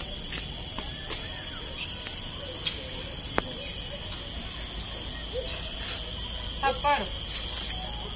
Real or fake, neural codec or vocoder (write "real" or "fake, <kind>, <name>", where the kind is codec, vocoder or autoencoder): real